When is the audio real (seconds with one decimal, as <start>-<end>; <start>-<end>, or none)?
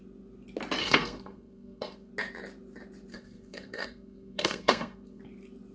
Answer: 0.0-0.8; 2.1-3.1; 5.2-5.7